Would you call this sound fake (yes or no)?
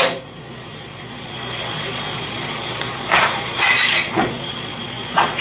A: yes